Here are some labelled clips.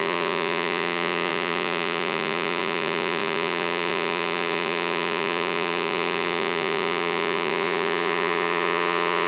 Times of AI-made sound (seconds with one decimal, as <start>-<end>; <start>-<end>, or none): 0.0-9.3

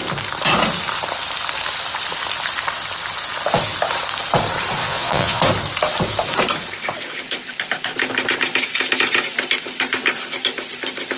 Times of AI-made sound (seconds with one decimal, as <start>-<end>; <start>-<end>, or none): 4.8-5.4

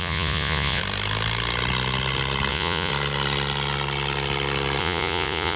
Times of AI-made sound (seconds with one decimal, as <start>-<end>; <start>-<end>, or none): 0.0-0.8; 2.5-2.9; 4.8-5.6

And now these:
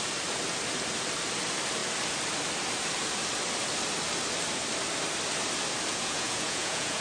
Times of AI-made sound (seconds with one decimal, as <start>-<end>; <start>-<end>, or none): 5.9-7.0

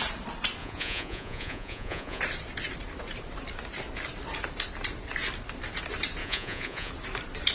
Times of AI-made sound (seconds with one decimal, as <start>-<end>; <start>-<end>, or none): 0.6-2.2; 6.2-6.9

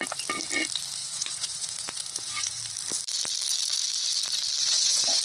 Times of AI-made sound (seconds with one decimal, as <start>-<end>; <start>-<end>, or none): 1.0-2.6; 4.6-5.2